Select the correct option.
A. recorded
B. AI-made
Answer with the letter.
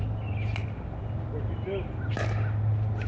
A